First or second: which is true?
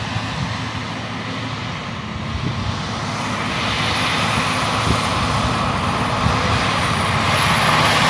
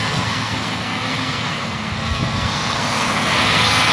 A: first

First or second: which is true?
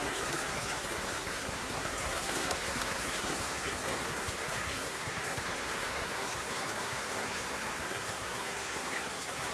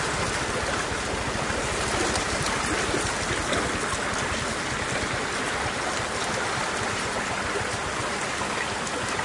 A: second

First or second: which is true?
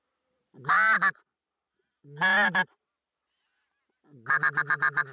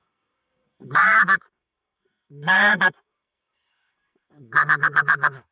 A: first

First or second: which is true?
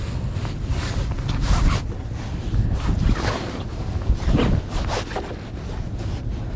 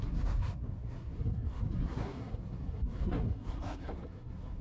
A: first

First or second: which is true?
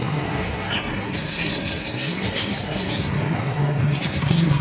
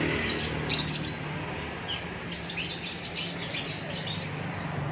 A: second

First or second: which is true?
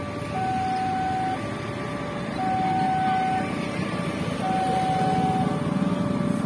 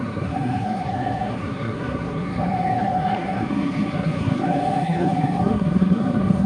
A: first